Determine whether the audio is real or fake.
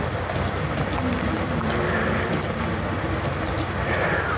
fake